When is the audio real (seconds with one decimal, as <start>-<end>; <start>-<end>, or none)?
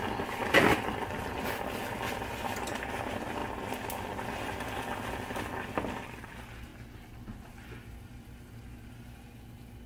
0.0-9.9